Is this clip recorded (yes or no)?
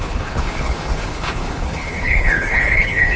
no